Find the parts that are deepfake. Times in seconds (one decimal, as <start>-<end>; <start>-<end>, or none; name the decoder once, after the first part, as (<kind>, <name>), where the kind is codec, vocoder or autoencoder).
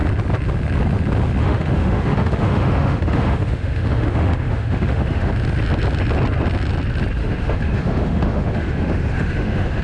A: 1.4-5.3 (autoencoder, DAC-VAE); 7.2-9.8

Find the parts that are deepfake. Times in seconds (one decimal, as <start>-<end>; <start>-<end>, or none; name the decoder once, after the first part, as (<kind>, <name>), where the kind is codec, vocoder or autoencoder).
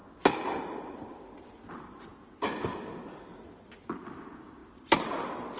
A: none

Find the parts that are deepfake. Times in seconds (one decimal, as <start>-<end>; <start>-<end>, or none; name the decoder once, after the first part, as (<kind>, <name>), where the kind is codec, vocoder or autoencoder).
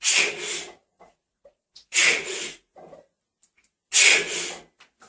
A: 0.9-2.8 (vocoder, Vocos)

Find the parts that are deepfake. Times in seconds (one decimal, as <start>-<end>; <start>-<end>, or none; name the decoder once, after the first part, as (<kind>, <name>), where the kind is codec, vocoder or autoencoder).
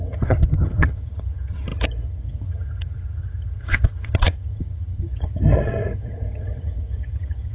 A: 0.0-7.5 (vocoder, HiFi-GAN)